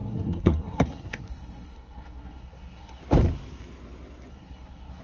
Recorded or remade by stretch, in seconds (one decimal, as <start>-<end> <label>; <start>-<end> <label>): 0.0-3.0 remade; 3.0-4.3 recorded; 4.3-5.0 remade